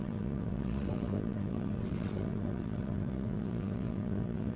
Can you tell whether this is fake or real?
fake